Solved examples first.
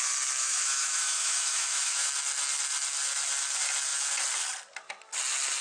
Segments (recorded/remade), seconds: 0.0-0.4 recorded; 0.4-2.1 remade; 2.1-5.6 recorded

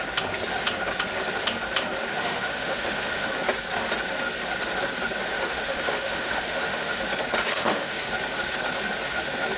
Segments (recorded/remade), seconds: 0.0-2.1 recorded; 2.1-3.3 remade; 3.3-5.3 recorded; 5.3-7.0 remade; 7.0-7.5 recorded; 7.5-8.1 remade; 8.1-9.6 recorded

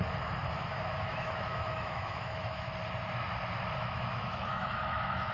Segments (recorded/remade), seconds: 0.0-0.7 recorded; 0.7-2.7 remade; 2.7-3.8 recorded; 3.8-5.3 remade

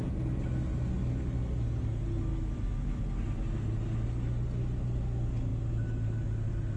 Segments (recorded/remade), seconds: 0.0-2.3 recorded; 2.3-3.0 remade; 3.0-6.8 recorded

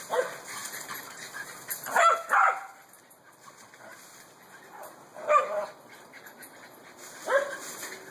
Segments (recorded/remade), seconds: 0.0-8.1 recorded

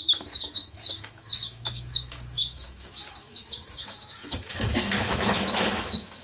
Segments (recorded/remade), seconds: 0.0-6.2 remade